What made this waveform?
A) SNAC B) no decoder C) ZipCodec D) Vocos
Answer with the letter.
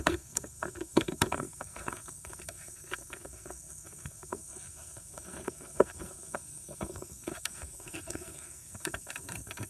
A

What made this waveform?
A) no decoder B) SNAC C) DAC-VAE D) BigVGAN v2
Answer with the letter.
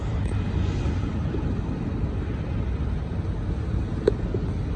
A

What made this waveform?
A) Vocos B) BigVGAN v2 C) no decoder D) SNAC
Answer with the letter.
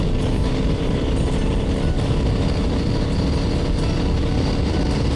C